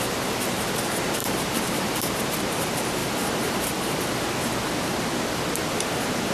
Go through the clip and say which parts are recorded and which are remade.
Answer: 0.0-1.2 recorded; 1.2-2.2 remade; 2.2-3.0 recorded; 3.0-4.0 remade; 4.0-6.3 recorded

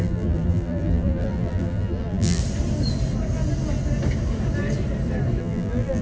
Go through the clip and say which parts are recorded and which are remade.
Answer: 0.0-2.4 remade; 2.4-5.4 recorded; 5.4-6.0 remade

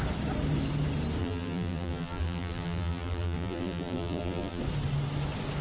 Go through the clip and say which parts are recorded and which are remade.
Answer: 0.0-1.2 recorded; 1.2-4.6 remade; 4.6-5.6 recorded

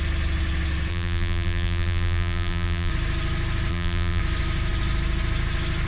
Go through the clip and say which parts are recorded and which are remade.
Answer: 0.0-0.9 recorded; 0.9-2.9 remade; 2.9-3.7 recorded; 3.7-4.2 remade; 4.2-5.9 recorded

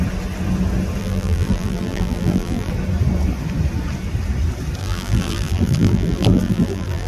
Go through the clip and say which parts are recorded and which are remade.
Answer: 0.0-1.0 recorded; 1.0-2.7 remade; 2.7-4.8 recorded; 4.8-7.1 remade

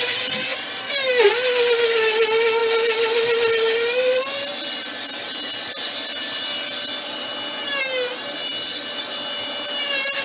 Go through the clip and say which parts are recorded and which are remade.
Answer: 0.0-10.2 recorded

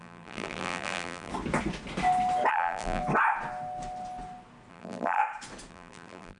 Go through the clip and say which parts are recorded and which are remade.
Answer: 0.0-1.3 remade; 1.3-2.5 recorded; 2.5-3.0 remade; 3.0-4.7 recorded; 4.7-5.2 remade; 5.2-5.7 recorded; 5.7-6.4 remade

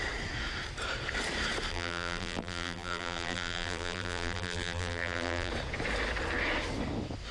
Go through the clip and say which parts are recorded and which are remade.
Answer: 0.0-1.7 recorded; 1.7-5.5 remade; 5.5-7.3 recorded